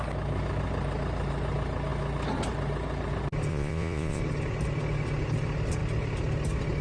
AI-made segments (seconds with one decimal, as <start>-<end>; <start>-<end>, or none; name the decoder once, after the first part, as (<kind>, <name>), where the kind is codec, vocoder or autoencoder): 3.5-4.2 (vocoder, Vocos)